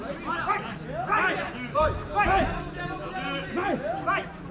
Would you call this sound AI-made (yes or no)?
no